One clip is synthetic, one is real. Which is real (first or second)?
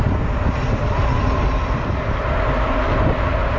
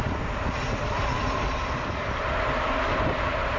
first